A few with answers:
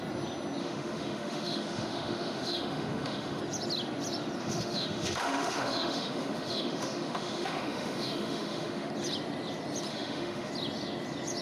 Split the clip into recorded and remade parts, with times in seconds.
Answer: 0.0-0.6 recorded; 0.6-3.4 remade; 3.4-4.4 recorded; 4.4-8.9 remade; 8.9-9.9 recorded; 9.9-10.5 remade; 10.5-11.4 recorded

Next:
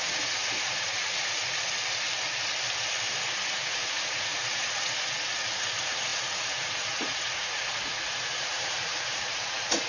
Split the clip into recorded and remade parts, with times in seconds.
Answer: 0.0-1.7 remade; 1.7-3.5 recorded; 3.5-9.9 remade

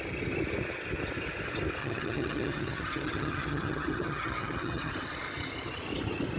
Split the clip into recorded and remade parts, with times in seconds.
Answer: 0.0-1.8 recorded; 1.8-4.9 remade; 4.9-6.4 recorded